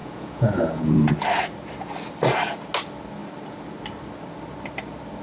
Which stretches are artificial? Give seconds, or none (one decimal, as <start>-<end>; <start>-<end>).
0.0-1.1